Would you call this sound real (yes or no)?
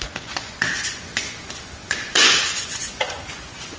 no